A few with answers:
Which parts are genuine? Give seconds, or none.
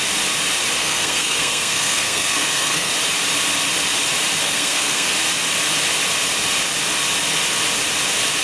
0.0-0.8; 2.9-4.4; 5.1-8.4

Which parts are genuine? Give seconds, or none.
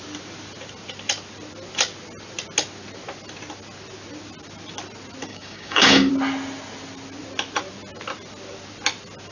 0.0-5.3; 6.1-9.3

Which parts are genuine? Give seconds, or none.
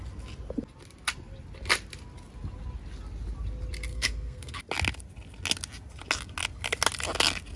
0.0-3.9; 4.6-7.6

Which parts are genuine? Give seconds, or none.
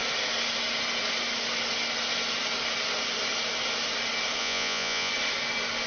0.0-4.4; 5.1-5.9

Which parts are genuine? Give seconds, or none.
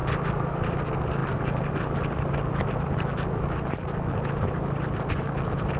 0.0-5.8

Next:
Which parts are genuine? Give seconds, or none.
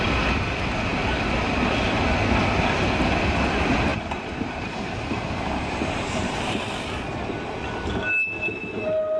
0.0-3.9; 6.6-9.2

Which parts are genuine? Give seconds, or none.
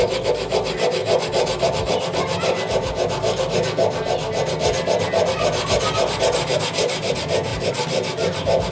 0.0-8.7